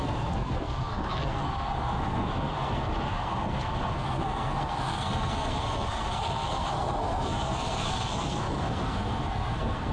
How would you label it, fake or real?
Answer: fake